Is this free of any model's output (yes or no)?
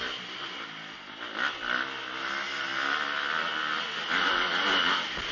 yes